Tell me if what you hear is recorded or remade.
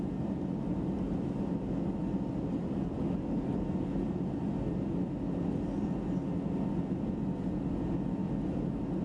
recorded